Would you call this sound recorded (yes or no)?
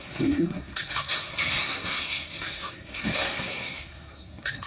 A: no